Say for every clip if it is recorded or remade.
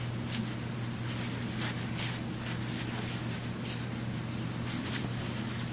recorded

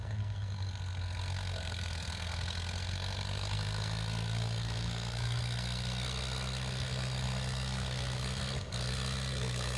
remade